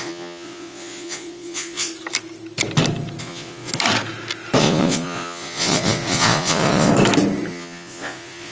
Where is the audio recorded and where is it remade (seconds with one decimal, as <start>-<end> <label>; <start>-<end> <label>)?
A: 0.0-1.9 remade; 1.9-3.2 recorded; 3.2-3.7 remade; 3.7-4.6 recorded; 4.6-6.9 remade; 6.9-7.5 recorded; 7.5-8.5 remade